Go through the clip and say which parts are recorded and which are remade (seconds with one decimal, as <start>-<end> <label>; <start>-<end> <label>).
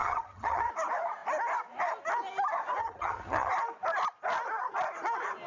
0.0-0.7 remade; 0.7-2.8 recorded; 2.8-3.5 remade; 3.5-5.5 recorded